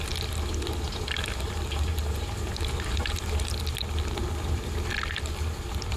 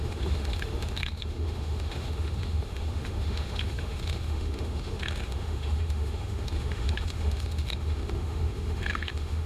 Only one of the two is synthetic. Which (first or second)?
second